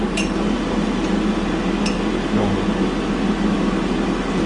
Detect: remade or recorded recorded